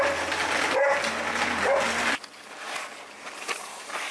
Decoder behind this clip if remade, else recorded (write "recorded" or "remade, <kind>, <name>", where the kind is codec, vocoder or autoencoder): recorded